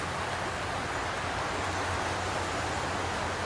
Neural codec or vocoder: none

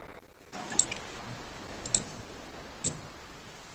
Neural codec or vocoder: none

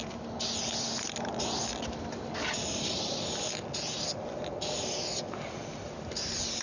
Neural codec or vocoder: none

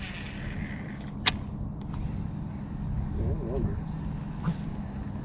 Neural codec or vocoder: none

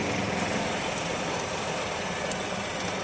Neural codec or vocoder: none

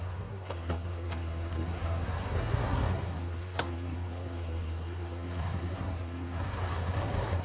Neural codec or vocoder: codec, SNAC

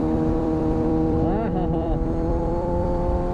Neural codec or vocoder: vocoder, BigVGAN v2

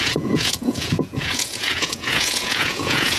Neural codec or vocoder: vocoder, Vocos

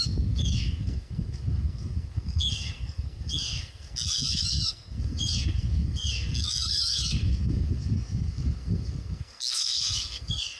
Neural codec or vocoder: codec, SNAC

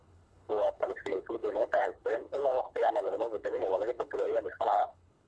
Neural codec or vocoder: codec, HILCodec